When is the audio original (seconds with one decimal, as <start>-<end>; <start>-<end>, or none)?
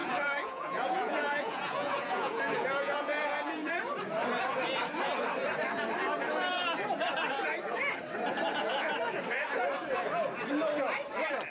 3.7-11.5